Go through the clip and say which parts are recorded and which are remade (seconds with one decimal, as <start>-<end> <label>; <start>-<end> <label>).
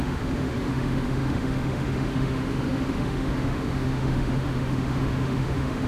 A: 0.0-5.9 remade